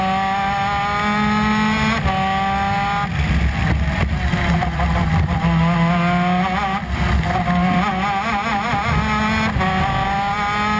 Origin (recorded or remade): recorded